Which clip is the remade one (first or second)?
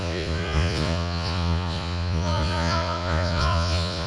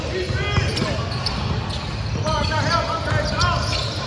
first